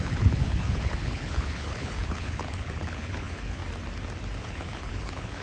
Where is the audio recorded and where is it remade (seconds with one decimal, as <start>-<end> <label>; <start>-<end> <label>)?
0.0-3.6 remade; 3.6-4.4 recorded; 4.4-5.4 remade